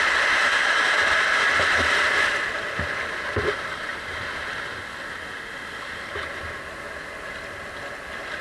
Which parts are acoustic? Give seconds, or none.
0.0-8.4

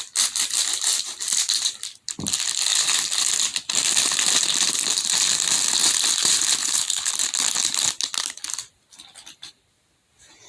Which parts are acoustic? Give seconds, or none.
0.0-6.6; 7.1-10.5

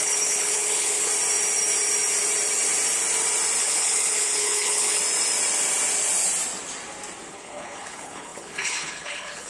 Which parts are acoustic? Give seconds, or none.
1.1-3.6; 5.0-7.3

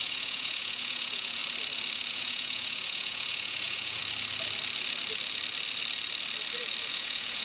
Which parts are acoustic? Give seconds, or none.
1.4-2.1; 4.0-6.9